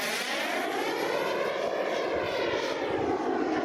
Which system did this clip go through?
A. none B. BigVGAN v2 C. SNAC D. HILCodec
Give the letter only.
A